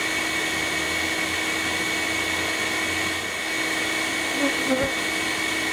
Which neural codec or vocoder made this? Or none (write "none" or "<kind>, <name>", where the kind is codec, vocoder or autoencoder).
none